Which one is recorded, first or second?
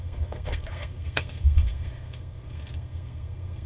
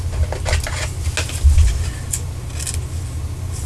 second